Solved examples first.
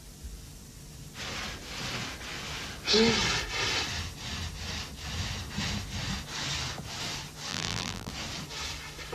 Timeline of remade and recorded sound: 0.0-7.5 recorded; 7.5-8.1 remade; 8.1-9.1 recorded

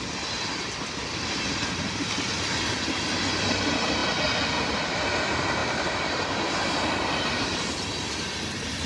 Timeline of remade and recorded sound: 0.0-5.6 recorded; 5.6-7.7 remade; 7.7-8.9 recorded

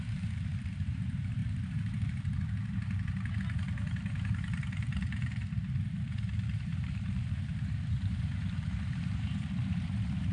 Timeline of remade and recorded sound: 0.0-10.3 remade

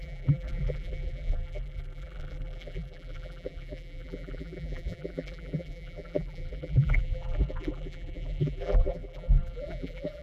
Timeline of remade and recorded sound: 0.0-10.2 remade